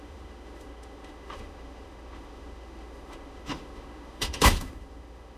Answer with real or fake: fake